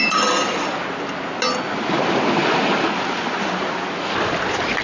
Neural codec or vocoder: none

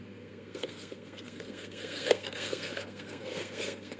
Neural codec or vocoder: codec, SNAC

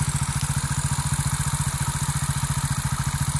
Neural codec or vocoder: none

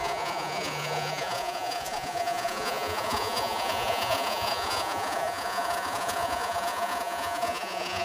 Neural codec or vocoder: vocoder, Vocos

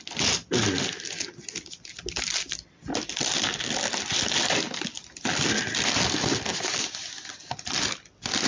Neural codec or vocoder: none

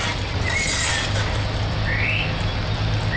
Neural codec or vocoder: none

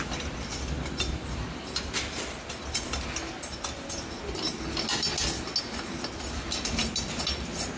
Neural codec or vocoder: none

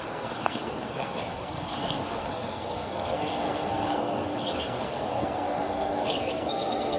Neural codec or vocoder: codec, SNAC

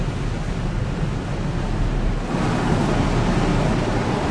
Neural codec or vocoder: none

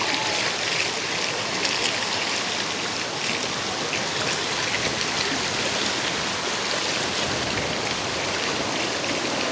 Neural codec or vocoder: none